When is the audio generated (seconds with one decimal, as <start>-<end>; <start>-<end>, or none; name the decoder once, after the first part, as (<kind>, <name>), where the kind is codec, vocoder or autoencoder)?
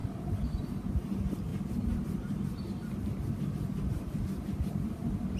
0.0-0.7 (vocoder, BigVGAN v2)